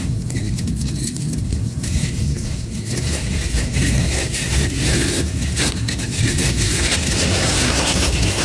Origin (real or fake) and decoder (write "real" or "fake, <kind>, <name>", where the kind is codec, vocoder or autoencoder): fake, codec, SNAC